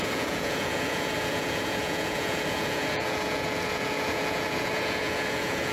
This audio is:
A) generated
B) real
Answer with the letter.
A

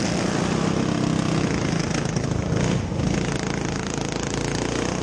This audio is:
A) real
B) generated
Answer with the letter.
A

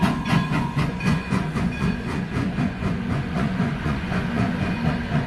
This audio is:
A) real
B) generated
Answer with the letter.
B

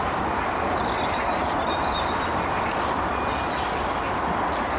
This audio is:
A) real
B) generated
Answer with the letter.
A